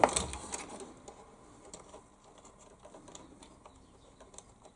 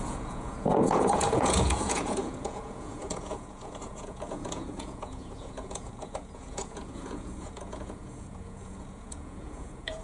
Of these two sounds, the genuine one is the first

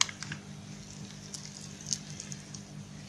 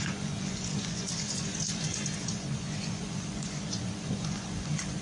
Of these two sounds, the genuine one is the first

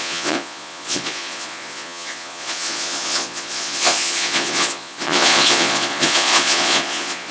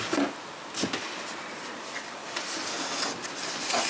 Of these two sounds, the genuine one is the second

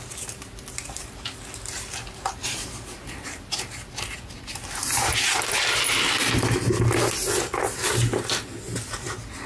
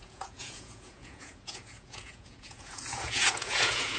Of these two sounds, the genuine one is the first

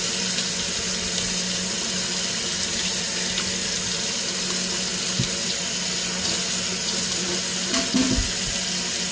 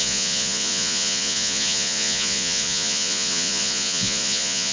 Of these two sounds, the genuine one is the first